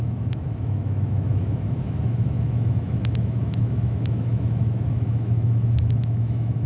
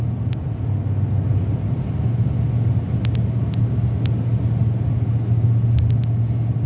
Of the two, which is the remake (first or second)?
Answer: first